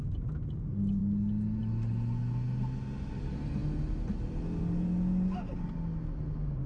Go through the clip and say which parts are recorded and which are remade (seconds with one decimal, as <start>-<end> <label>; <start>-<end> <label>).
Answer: 0.0-6.7 recorded